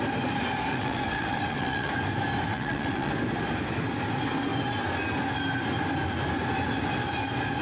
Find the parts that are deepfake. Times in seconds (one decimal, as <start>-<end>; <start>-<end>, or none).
0.7-1.9; 2.5-3.1